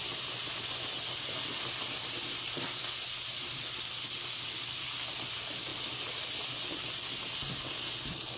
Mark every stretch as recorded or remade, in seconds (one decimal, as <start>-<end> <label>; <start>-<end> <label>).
0.0-8.4 recorded